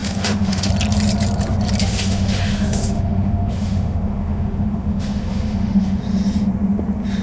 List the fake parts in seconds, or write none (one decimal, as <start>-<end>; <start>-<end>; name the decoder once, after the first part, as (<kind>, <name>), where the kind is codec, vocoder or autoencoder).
0.0-0.7 (autoencoder, DAC-VAE); 1.8-6.0